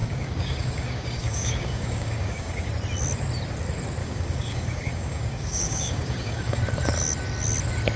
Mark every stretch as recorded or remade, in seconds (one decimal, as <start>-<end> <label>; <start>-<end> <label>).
0.0-2.7 remade; 2.7-4.0 recorded; 4.0-6.6 remade; 6.6-8.0 recorded